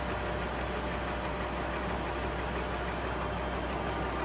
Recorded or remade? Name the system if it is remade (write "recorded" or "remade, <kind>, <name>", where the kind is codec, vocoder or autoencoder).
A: recorded